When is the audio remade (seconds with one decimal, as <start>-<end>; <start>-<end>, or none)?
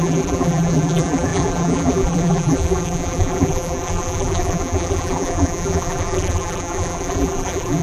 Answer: 0.0-7.8